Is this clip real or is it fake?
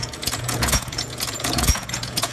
fake